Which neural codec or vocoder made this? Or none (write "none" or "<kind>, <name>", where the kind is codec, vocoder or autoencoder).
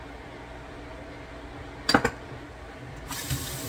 none